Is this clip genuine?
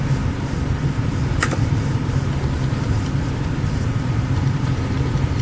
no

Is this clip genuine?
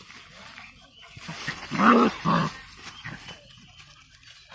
yes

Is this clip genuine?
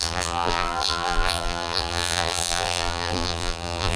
no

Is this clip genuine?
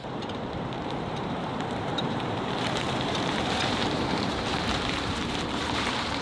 no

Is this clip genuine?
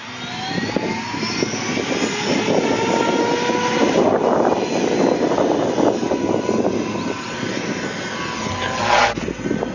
yes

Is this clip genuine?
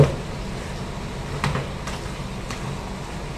yes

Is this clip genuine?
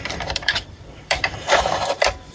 no